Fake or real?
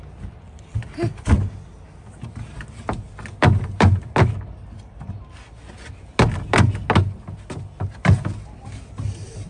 real